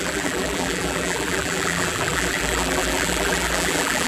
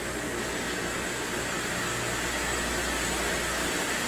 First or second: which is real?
second